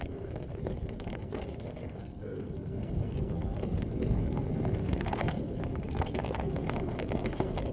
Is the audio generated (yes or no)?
yes